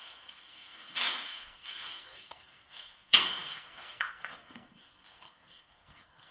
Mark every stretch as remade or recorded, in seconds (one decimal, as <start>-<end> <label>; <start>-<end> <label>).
0.0-6.3 remade